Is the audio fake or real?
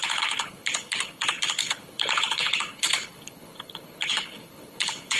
fake